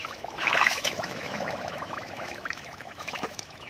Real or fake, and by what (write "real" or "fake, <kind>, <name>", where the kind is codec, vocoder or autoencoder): fake, autoencoder, DAC-VAE